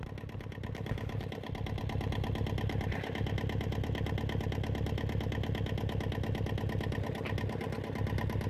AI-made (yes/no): no